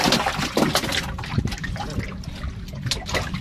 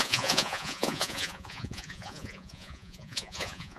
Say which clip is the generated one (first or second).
second